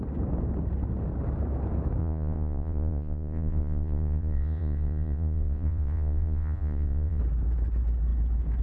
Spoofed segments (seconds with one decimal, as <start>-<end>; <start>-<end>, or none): 2.0-7.2